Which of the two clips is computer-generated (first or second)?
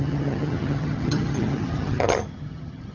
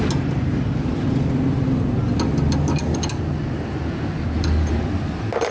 first